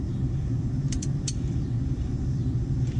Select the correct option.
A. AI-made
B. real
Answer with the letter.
A